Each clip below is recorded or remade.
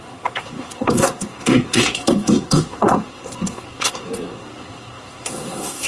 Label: remade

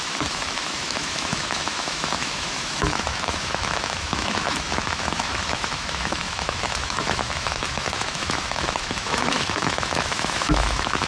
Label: remade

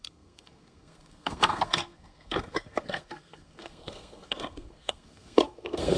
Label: remade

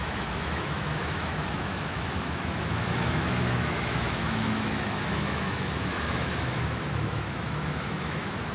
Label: remade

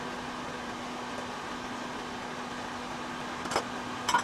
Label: recorded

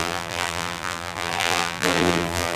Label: remade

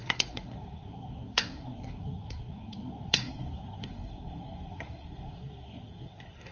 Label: remade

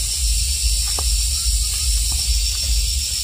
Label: recorded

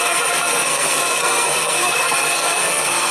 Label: remade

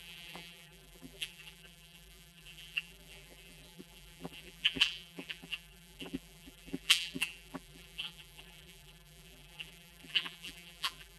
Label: remade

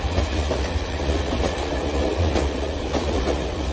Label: remade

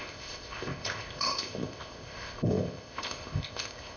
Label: remade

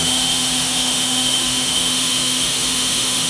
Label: remade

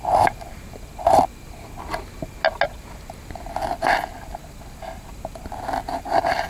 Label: recorded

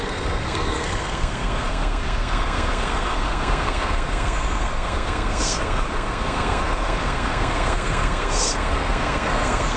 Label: remade